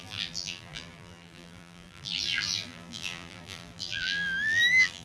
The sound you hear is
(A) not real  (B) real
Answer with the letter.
A